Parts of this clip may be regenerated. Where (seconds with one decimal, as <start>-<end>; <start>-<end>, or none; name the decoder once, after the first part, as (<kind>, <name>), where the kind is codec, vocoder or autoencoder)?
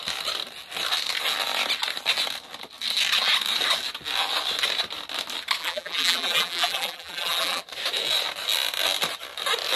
5.6-7.6 (vocoder, BigVGAN v2)